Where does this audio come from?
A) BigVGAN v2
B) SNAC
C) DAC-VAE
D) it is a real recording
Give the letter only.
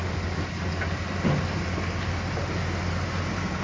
D